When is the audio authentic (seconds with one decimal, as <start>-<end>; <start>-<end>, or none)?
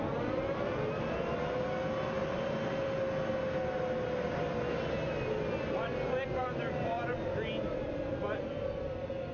0.0-6.4; 8.2-9.3